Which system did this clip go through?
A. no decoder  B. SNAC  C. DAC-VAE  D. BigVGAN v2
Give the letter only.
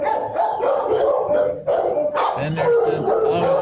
A